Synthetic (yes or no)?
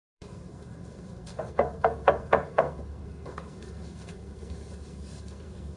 yes